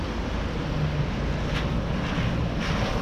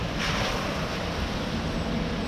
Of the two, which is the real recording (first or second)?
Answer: first